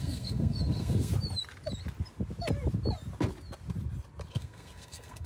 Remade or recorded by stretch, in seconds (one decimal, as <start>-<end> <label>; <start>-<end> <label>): 0.0-1.1 remade; 1.1-4.3 recorded; 4.3-5.3 remade